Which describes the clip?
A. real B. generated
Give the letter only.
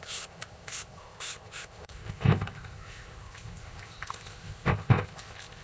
B